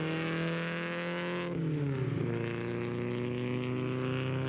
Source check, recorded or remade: recorded